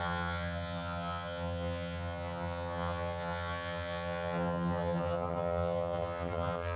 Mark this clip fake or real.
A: fake